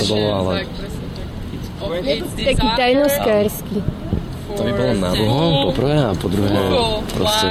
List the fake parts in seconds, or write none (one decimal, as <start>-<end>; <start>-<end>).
0.6-2.0